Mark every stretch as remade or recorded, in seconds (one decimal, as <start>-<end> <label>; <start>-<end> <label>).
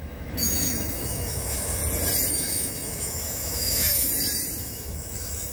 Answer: 0.0-1.8 remade; 1.8-2.3 recorded; 2.3-4.1 remade; 4.1-4.6 recorded; 4.6-5.5 remade